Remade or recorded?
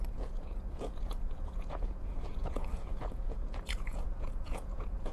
remade